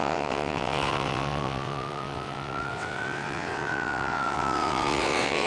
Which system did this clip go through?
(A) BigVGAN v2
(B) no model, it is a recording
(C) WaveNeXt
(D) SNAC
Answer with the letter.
C